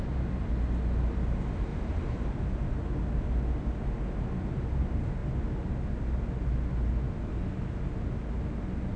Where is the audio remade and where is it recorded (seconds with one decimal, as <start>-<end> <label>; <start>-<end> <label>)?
0.0-1.7 recorded; 1.7-2.3 remade; 2.3-9.0 recorded